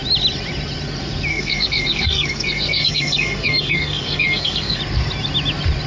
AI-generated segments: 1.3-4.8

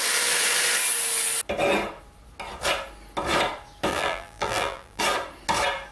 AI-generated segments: 3.9-5.0